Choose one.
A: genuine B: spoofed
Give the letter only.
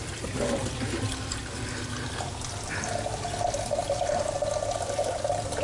B